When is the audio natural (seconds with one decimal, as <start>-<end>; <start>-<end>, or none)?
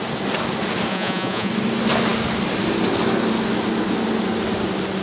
0.0-0.9; 1.5-5.0